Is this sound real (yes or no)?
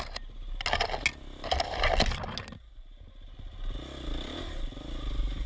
yes